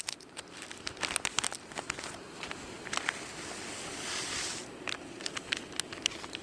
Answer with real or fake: real